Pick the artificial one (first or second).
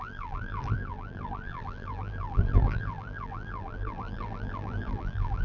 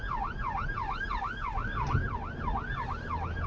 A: first